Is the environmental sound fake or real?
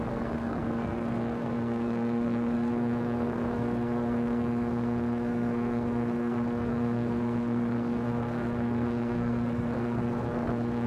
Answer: fake